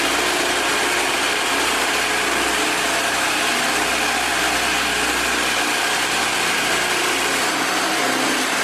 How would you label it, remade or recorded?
recorded